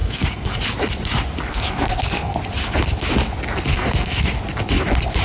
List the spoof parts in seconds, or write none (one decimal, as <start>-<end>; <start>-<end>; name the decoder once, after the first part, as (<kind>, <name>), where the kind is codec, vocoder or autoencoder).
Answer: 0.0-0.6 (codec, SNAC); 1.5-2.4; 3.7-4.4